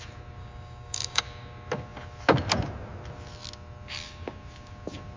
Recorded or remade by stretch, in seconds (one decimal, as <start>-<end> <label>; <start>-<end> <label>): 0.0-0.4 recorded; 0.4-1.2 remade; 1.2-5.2 recorded